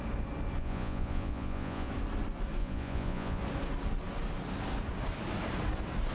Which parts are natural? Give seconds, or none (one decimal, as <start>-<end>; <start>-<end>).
0.0-0.6; 1.9-2.6; 3.4-6.1

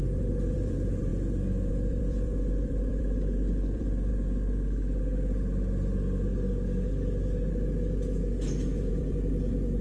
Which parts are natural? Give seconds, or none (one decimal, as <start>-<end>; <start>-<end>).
1.1-1.7; 4.1-8.9

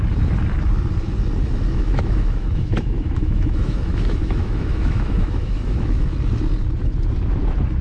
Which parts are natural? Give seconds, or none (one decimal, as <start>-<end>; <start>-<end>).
0.0-1.7; 6.1-7.8

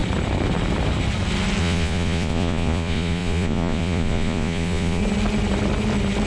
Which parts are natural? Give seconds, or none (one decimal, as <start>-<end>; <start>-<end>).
0.0-1.6; 5.0-6.3

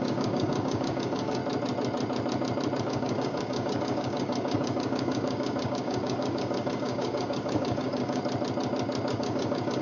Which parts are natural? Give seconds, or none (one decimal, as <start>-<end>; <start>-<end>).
1.4-2.8; 8.2-9.1

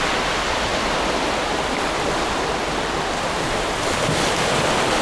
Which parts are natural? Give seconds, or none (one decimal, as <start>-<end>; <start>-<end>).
0.0-5.0

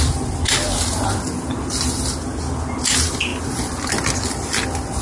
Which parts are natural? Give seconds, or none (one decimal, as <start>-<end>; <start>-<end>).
0.0-5.0

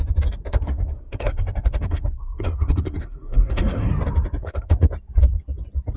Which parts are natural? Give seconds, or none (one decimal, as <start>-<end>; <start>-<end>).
0.0-0.5; 3.9-4.4; 4.9-6.0